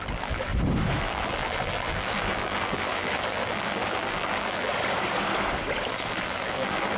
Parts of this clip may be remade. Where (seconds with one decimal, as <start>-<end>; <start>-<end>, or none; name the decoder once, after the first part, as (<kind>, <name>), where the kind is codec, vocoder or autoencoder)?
0.0-0.5 (vocoder, BigVGAN v2); 1.0-4.7; 5.9-7.0